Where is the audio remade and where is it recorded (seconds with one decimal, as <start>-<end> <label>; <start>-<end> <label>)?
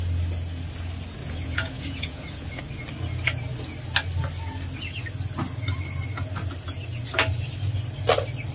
0.0-1.2 recorded; 1.2-2.6 remade; 2.6-8.5 recorded